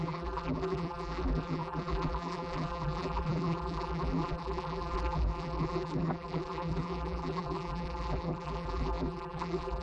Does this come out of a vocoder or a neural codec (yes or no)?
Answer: yes